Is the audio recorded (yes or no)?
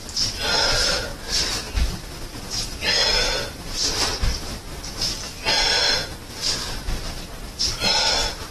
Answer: yes